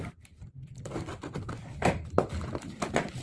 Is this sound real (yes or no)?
yes